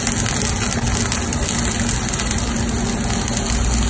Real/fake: real